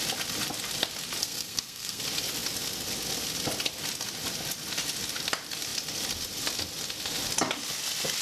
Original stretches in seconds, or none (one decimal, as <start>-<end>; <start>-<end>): 0.0-1.2; 2.0-8.2